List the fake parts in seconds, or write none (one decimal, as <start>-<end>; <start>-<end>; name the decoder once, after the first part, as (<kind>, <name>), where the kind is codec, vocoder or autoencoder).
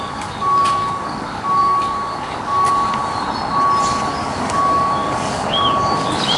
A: 0.0-3.0 (codec, DAC); 4.1-6.4